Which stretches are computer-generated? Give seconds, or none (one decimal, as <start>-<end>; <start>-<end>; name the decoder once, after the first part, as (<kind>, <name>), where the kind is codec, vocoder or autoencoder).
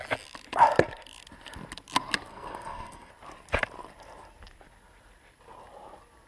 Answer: 2.3-3.1 (codec, SNAC)